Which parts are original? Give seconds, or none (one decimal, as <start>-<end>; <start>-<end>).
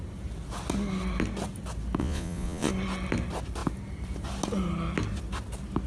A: 0.0-2.0; 2.7-5.9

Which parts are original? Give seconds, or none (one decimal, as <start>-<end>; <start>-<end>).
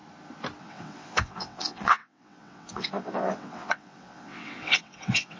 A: 0.0-0.6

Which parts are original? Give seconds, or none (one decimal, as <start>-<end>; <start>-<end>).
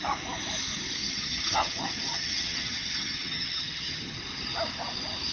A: 0.0-1.0; 4.2-5.3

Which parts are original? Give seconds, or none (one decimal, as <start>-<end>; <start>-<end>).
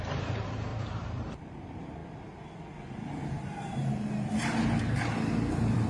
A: 2.0-5.5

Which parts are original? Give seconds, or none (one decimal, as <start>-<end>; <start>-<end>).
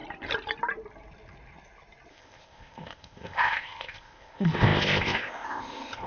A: 0.0-2.1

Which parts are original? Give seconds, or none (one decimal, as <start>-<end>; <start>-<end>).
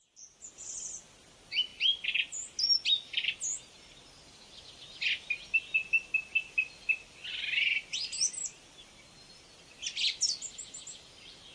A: 0.0-11.5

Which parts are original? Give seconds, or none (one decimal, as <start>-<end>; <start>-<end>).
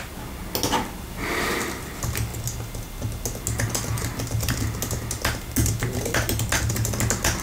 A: 0.0-7.4